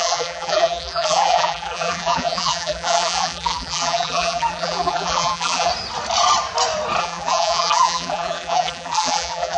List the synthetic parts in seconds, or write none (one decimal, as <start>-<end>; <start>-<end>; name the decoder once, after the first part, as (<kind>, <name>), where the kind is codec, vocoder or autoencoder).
0.0-5.7 (vocoder, BigVGAN v2); 7.0-9.6